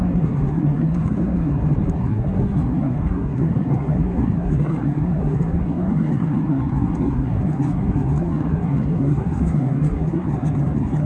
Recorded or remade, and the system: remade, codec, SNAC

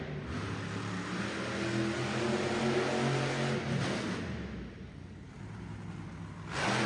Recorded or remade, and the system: recorded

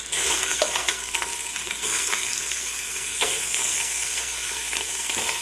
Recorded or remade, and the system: remade, codec, SNAC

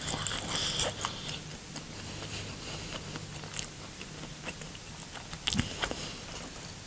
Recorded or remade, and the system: recorded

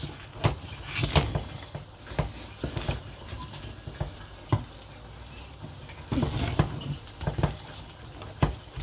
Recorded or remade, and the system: recorded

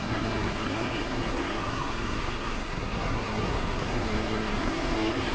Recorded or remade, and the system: remade, codec, SNAC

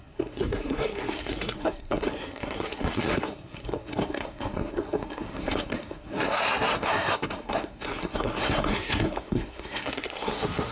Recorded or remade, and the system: remade, codec, SNAC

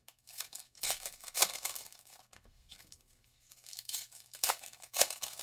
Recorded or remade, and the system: remade, codec, SNAC